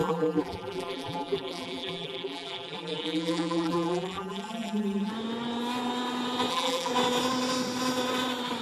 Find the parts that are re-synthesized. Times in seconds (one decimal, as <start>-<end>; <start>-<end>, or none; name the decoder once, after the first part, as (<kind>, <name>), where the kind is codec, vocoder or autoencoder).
0.0-5.1 (vocoder, BigVGAN v2); 6.5-6.9